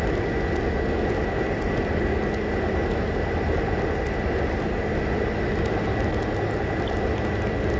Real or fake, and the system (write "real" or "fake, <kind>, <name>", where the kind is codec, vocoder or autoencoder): real